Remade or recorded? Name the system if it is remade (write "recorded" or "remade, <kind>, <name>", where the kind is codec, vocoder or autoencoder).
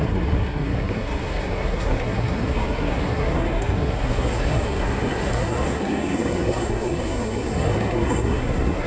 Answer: remade, codec, SNAC